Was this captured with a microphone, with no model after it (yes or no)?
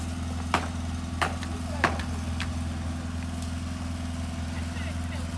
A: yes